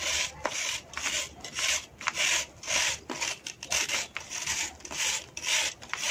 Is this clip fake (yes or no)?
no